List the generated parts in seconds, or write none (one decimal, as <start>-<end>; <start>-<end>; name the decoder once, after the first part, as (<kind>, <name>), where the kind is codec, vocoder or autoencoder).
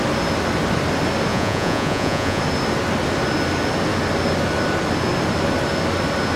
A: 1.3-2.4 (vocoder, Vocos)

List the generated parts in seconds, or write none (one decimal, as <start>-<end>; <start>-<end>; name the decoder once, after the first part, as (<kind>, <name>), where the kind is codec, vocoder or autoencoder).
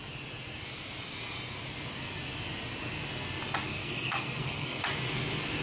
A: 3.7-4.8 (codec, SNAC)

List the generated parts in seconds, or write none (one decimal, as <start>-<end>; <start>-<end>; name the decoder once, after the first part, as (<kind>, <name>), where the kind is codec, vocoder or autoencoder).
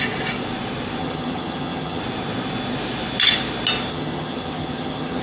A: 1.0-2.0 (vocoder, HiFi-GAN); 3.9-5.2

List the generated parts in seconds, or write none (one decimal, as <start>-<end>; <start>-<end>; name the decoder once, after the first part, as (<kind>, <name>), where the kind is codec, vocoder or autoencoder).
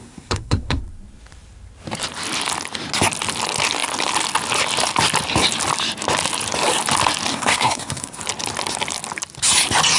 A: 0.0-0.8 (codec, SNAC); 7.3-8.2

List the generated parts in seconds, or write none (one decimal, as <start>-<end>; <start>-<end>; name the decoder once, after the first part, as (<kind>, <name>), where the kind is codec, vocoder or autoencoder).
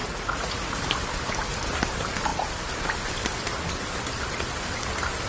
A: 0.0-0.8 (vocoder, Vocos)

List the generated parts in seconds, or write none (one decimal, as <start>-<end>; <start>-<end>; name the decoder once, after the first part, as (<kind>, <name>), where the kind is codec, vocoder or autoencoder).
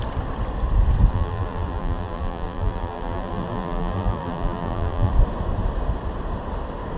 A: 1.1-5.1 (vocoder, BigVGAN v2)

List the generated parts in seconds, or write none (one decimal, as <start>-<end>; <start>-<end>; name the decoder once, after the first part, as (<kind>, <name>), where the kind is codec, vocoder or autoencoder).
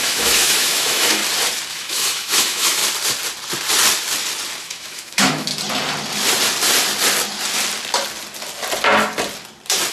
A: 0.0-1.2 (autoencoder, DAC-VAE); 1.7-2.8; 4.6-5.5